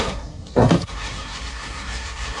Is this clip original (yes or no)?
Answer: no